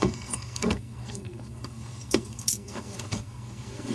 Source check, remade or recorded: remade